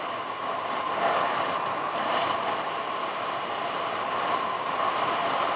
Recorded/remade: recorded